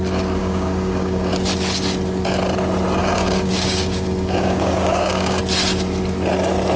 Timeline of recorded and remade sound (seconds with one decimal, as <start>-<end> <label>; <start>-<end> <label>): 0.0-0.4 recorded; 0.4-1.3 remade; 1.3-3.0 recorded; 3.0-5.4 remade; 5.4-6.8 recorded